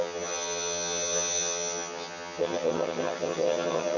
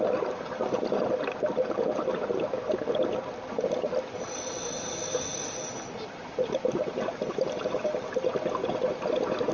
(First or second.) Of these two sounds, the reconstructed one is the first